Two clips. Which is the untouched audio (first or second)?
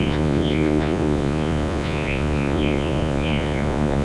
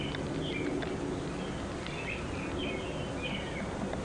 second